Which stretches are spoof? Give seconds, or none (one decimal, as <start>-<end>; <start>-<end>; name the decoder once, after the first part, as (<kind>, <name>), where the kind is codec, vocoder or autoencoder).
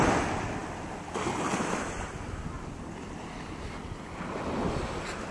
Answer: none